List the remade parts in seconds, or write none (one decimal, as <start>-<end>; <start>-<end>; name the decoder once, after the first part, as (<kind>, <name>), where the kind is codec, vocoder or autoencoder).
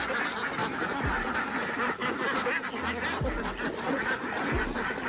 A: none